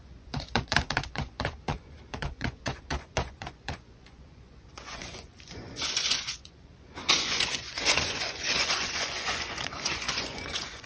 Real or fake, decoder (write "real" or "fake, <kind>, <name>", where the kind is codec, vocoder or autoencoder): fake, vocoder, Vocos